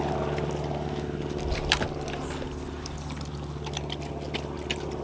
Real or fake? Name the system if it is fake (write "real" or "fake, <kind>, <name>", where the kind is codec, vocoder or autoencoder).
real